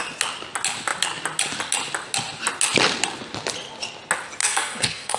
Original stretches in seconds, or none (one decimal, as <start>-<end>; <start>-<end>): 0.0-4.4